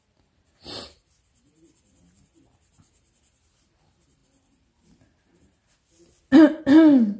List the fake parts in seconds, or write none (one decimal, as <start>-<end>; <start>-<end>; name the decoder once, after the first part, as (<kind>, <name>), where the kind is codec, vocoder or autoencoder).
none